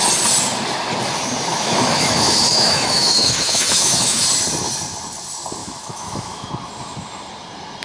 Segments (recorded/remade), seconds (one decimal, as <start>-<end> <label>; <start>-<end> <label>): 0.0-1.5 recorded; 1.5-4.2 remade; 4.2-5.6 recorded; 5.6-6.5 remade; 6.5-7.8 recorded

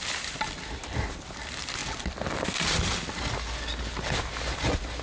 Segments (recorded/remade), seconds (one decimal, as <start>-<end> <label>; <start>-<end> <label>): 0.0-5.0 recorded

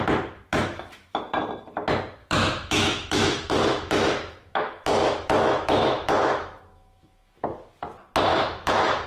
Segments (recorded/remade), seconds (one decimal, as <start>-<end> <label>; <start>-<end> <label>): 0.0-0.5 recorded; 0.5-1.2 remade; 1.2-2.2 recorded; 2.2-7.4 remade; 7.4-8.3 recorded; 8.3-9.1 remade

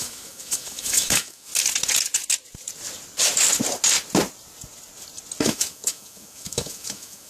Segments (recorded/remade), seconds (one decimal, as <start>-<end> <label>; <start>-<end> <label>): 0.0-1.5 remade; 1.5-5.4 recorded; 5.4-7.3 remade

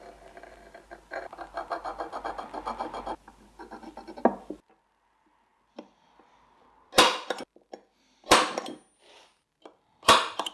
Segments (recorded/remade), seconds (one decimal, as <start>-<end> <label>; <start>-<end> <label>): 0.0-10.5 recorded

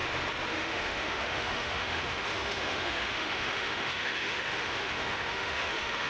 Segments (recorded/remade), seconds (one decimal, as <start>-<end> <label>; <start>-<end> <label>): 0.0-0.5 recorded; 0.5-6.1 remade

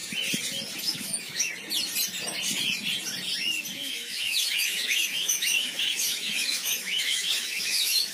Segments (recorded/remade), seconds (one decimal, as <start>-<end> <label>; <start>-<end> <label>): 0.0-0.8 recorded; 0.8-1.5 remade; 1.5-3.8 recorded; 3.8-8.1 remade

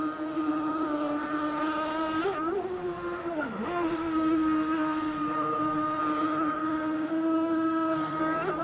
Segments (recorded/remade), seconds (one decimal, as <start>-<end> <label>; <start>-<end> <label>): 0.0-2.8 recorded; 2.8-6.0 remade; 6.0-6.6 recorded; 6.6-8.2 remade; 8.2-8.6 recorded